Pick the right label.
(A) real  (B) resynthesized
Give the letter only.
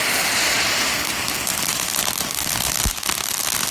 A